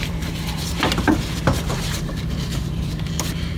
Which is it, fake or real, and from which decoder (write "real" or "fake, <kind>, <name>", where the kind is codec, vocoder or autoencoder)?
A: fake, vocoder, BigVGAN v2